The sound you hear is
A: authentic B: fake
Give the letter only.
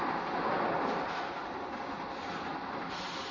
A